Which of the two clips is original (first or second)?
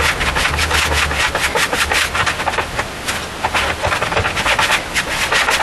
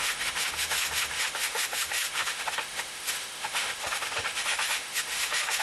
first